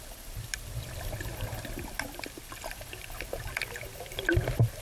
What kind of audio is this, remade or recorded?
remade